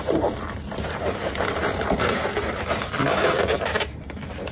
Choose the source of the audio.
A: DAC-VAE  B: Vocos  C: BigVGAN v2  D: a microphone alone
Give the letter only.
C